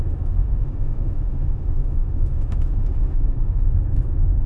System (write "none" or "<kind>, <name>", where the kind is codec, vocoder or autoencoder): autoencoder, DAC-VAE